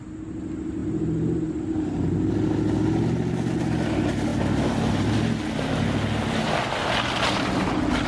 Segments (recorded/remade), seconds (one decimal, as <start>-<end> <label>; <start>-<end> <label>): 0.0-8.1 recorded